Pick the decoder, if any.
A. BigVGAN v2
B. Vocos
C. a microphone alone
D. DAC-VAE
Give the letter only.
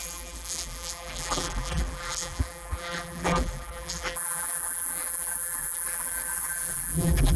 A